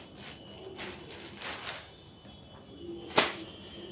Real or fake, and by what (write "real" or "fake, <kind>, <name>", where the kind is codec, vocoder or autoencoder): real